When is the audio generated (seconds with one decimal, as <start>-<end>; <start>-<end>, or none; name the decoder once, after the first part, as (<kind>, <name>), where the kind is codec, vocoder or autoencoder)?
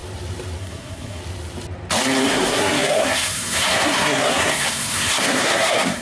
0.6-1.2 (codec, SNAC); 2.3-6.0